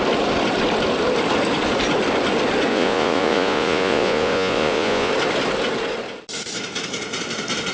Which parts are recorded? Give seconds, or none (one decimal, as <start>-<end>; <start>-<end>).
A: 0.0-2.7; 5.1-7.7